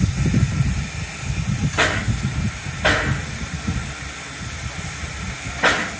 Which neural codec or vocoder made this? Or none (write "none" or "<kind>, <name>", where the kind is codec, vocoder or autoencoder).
none